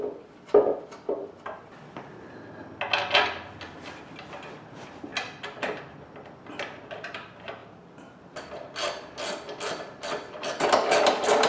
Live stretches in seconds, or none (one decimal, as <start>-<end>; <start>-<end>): 0.0-11.5